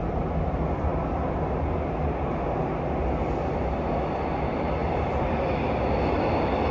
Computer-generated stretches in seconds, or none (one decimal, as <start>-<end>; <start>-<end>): none